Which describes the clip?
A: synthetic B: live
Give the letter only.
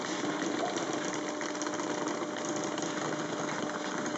B